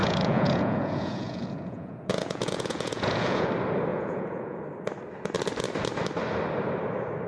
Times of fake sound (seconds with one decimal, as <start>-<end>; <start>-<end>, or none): 0.0-3.5; 3.9-4.6